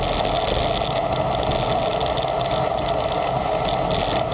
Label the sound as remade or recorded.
recorded